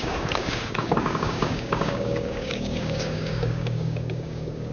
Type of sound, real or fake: fake